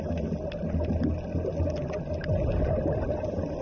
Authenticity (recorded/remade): recorded